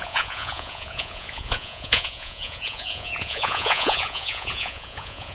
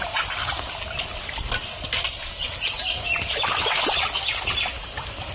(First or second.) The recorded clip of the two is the second